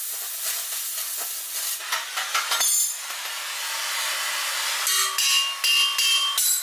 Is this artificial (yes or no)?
no